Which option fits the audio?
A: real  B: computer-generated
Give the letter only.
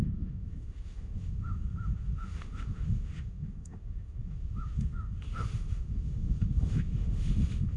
B